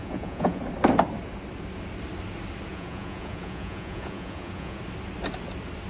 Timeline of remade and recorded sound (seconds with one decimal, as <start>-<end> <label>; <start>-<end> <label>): 0.0-0.6 remade; 0.6-2.7 recorded; 2.7-4.8 remade; 4.8-5.9 recorded